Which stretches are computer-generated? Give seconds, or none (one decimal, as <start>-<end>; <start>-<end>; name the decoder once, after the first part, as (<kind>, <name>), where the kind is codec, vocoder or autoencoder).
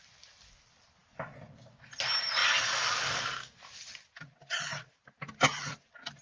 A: 1.0-1.7 (vocoder, BigVGAN v2)